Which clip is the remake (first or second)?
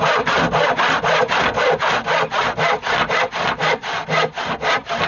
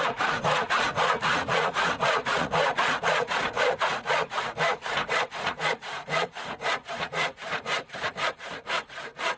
second